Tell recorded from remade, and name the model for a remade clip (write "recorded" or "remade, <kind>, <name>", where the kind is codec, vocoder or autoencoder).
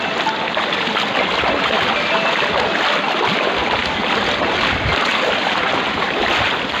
recorded